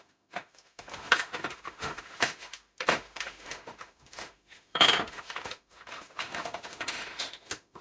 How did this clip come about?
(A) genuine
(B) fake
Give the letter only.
B